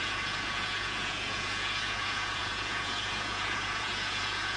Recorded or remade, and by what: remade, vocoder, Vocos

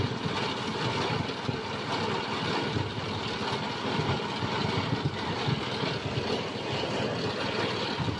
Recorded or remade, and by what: recorded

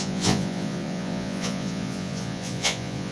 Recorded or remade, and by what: remade, vocoder, Vocos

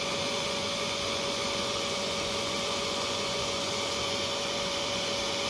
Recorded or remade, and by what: remade, vocoder, Vocos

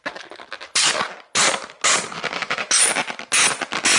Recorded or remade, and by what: recorded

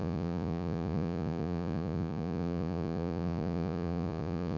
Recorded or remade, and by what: remade, vocoder, Vocos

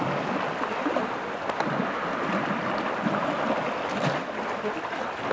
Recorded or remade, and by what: recorded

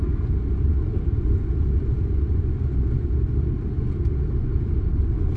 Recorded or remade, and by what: recorded